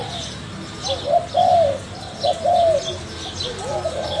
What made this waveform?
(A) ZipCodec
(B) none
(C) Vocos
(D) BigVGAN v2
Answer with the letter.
B